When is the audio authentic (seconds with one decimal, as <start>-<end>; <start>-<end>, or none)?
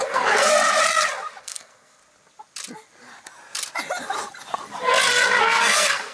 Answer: 0.5-1.4; 2.0-5.4